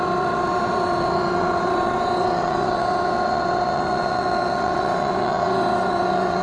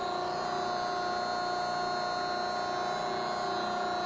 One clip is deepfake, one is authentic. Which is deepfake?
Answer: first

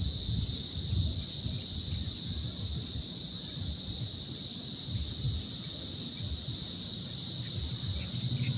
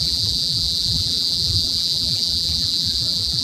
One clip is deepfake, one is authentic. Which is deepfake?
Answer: second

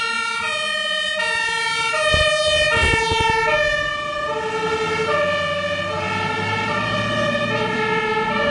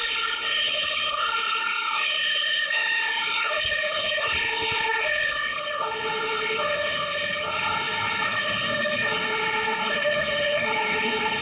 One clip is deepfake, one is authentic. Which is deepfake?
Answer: second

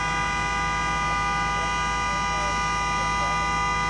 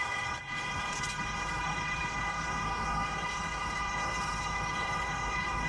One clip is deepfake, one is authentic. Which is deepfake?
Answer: second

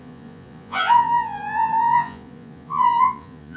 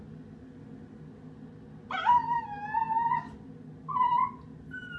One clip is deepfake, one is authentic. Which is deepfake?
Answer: first